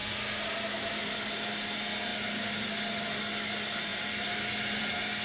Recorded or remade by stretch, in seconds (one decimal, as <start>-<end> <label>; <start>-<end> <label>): 0.0-5.2 recorded

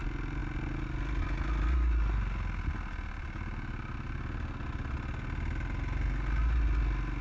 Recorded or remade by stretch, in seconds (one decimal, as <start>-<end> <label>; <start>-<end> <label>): 0.0-7.2 recorded